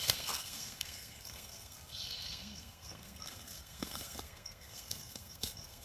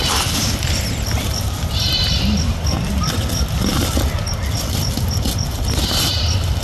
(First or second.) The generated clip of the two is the first